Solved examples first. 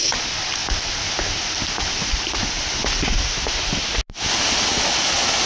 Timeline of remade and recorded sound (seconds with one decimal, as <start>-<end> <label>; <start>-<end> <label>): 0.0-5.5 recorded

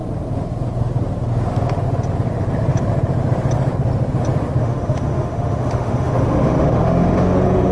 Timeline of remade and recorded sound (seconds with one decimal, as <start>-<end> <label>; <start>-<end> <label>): 0.0-4.6 recorded; 4.6-7.7 remade

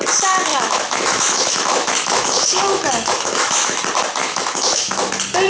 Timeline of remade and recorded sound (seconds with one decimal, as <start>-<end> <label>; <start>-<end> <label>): 0.0-0.5 recorded; 0.5-3.8 remade; 3.8-4.2 recorded; 4.2-5.1 remade; 5.1-5.5 recorded

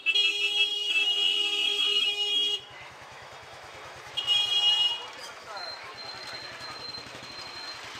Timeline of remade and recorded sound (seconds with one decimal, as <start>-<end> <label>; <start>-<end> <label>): 0.0-0.7 recorded; 0.7-4.1 remade; 4.1-5.2 recorded; 5.2-5.9 remade; 5.9-8.0 recorded

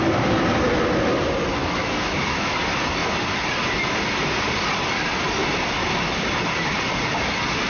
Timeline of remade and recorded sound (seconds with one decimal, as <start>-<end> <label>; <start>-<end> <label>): 0.0-1.6 recorded; 1.6-2.5 remade; 2.5-7.7 recorded